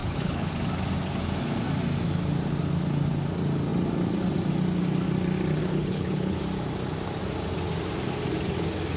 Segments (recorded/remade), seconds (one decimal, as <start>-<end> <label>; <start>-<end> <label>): 0.0-0.5 remade; 0.5-5.6 recorded; 5.6-6.4 remade; 6.4-9.0 recorded